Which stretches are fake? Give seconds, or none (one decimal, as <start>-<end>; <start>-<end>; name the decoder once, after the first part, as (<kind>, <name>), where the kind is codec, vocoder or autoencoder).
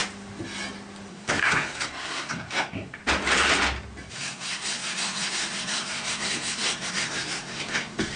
1.1-3.0 (codec, SNAC); 4.1-8.2